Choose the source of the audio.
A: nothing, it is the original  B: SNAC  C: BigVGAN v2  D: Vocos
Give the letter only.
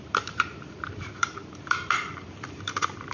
C